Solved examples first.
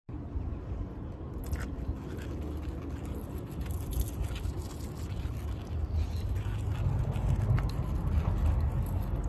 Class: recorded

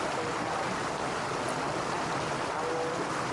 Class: recorded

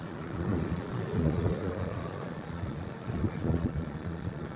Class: remade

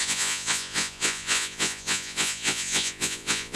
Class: remade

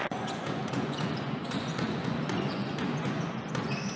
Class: remade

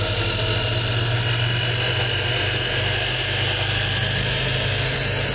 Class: recorded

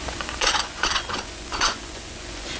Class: remade